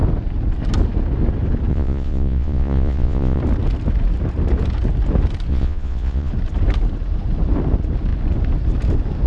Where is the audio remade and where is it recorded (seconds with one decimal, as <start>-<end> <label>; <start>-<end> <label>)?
0.0-1.7 recorded; 1.7-3.4 remade; 3.4-5.5 recorded; 5.5-6.3 remade; 6.3-9.3 recorded